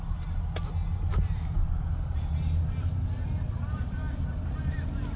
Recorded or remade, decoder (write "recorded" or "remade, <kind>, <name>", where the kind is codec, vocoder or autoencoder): recorded